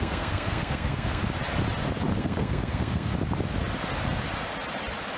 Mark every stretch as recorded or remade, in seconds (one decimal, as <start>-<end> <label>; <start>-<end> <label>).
0.0-1.2 remade; 1.2-2.2 recorded; 2.2-3.1 remade; 3.1-5.2 recorded

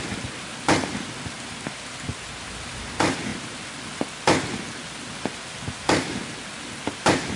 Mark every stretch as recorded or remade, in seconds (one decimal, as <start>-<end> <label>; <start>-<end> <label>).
0.0-7.4 recorded

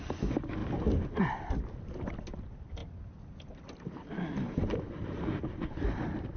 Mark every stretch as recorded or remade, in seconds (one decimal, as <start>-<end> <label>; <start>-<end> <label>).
0.0-6.4 recorded

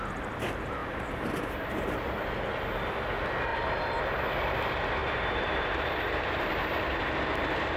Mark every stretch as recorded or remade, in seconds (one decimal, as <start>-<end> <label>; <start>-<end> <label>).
0.0-0.8 recorded; 0.8-1.3 remade; 1.3-3.5 recorded; 3.5-4.0 remade; 4.0-5.0 recorded; 5.0-7.0 remade; 7.0-7.8 recorded

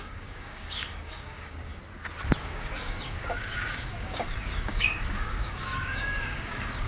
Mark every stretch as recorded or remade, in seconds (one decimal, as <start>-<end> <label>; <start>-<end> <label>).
0.0-1.8 remade; 1.8-2.4 recorded; 2.4-6.9 remade

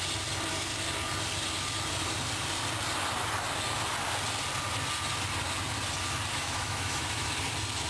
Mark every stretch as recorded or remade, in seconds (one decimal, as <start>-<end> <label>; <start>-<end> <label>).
0.0-6.3 recorded; 6.3-7.3 remade; 7.3-7.9 recorded

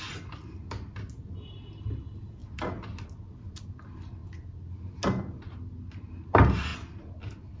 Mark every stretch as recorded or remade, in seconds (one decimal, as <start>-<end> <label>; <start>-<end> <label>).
0.0-7.6 recorded